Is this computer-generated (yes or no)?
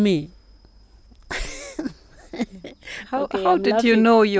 no